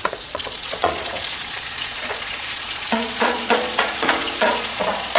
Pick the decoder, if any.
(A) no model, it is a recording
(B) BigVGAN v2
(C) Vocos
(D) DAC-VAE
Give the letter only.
C